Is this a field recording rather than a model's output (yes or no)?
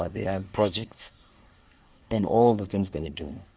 no